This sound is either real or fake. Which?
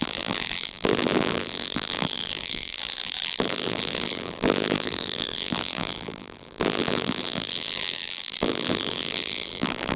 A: fake